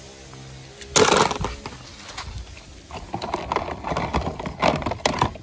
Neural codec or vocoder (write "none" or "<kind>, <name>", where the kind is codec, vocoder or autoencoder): none